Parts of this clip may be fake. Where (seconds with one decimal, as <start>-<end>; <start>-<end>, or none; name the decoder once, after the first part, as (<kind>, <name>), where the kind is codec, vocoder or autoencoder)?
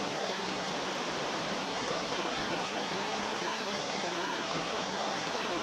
0.0-0.7 (codec, SNAC); 1.6-5.6